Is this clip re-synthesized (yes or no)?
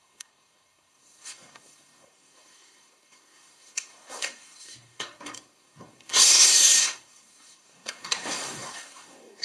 yes